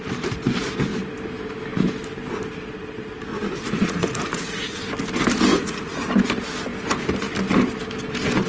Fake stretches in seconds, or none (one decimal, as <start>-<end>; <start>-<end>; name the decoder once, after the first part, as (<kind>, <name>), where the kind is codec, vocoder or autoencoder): 3.3-4.8 (vocoder, Vocos); 5.5-6.1